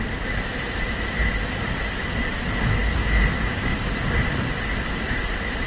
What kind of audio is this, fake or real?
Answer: real